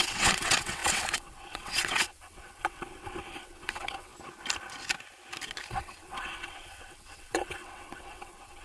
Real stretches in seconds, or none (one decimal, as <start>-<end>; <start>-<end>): 4.1-5.7